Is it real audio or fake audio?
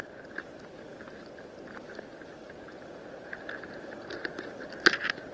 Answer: real